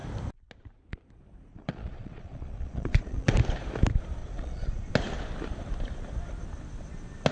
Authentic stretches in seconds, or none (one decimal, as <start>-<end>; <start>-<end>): 0.0-1.5; 3.3-4.2; 4.9-7.3